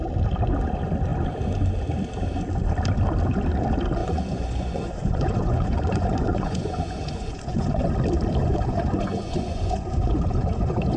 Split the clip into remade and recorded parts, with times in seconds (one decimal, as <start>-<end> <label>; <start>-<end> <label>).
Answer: 0.0-4.0 recorded; 4.0-7.9 remade; 7.9-8.4 recorded; 8.4-11.0 remade